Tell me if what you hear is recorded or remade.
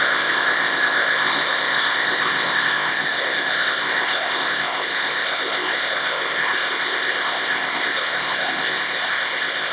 remade